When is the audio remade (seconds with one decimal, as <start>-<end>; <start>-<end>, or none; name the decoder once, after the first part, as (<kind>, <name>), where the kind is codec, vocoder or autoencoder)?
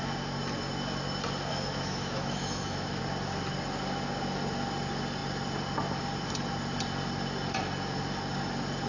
1.5-3.0 (autoencoder, DAC-VAE)